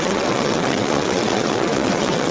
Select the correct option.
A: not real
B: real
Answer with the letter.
A